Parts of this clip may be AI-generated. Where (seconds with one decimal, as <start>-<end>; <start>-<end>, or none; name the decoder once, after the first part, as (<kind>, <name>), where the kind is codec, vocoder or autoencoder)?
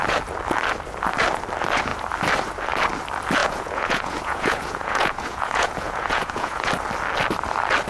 3.4-6.7 (vocoder, Vocos)